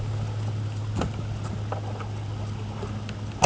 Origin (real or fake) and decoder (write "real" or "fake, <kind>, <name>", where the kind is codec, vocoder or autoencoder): real